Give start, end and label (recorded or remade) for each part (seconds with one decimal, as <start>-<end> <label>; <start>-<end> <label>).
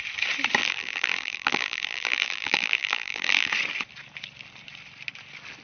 0.0-0.6 recorded; 0.6-3.5 remade; 3.5-5.6 recorded